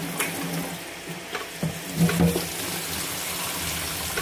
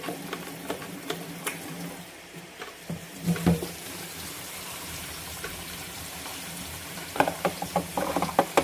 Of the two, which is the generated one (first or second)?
second